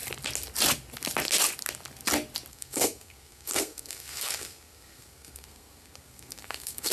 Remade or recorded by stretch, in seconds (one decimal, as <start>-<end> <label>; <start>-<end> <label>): 0.0-2.5 recorded; 2.5-6.9 remade